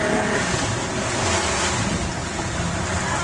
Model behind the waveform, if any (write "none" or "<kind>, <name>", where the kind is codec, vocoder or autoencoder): none